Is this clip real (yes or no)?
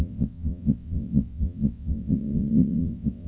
no